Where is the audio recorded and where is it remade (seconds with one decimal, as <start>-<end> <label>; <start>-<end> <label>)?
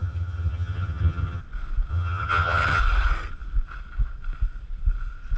0.0-1.4 remade; 1.4-1.9 recorded; 1.9-2.8 remade; 2.8-5.4 recorded